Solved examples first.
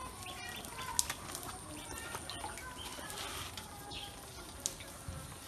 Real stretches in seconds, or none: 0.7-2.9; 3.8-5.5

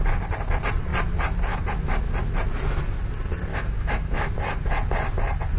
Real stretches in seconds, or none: 0.0-3.5; 4.3-5.6

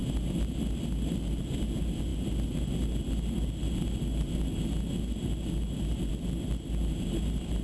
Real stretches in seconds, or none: 0.0-7.6

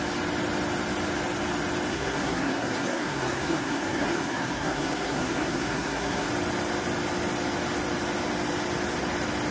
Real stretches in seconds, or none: 0.0-1.9; 6.3-9.5